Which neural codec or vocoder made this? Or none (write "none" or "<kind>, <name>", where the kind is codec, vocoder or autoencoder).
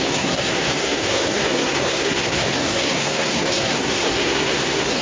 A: codec, SNAC